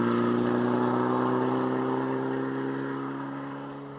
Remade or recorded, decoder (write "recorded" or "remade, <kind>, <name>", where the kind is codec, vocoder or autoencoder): recorded